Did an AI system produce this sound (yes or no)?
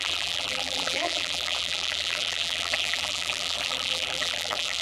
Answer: yes